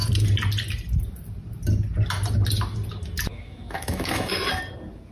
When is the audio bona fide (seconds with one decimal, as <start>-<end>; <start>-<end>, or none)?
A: 0.0-3.3; 4.3-5.1